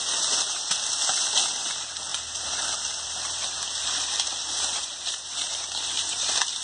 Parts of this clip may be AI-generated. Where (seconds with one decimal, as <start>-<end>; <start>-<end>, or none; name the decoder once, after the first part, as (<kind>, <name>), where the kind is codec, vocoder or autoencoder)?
none